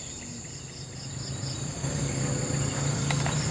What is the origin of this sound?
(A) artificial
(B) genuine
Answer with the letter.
B